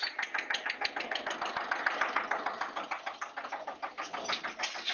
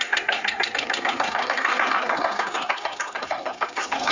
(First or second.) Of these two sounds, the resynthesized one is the second